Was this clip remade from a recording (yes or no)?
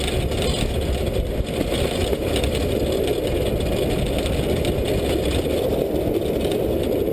no